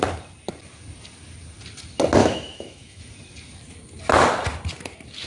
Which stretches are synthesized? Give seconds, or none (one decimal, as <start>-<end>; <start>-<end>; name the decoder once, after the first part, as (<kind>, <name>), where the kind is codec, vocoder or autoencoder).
2.2-3.0 (autoencoder, DAC-VAE)